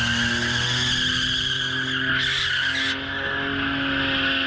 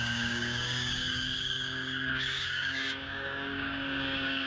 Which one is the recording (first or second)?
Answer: first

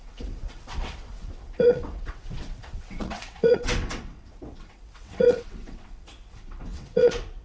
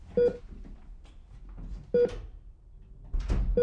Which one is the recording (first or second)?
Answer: second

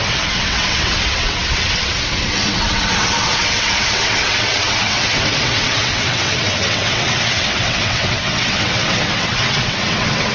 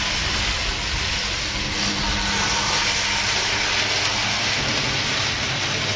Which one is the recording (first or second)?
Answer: second